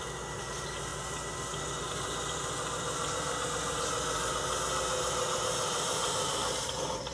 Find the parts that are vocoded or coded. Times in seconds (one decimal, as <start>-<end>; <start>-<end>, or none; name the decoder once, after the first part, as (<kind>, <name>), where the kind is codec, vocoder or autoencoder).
none